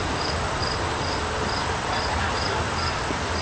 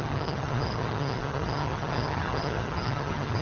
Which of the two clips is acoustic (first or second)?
first